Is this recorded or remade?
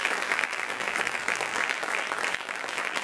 remade